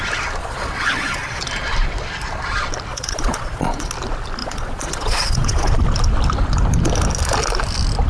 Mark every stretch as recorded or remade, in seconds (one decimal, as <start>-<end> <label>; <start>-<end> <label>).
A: 0.0-0.4 recorded; 0.4-1.4 remade; 1.4-2.9 recorded; 2.9-3.9 remade; 3.9-4.4 recorded; 4.4-5.7 remade; 5.7-8.1 recorded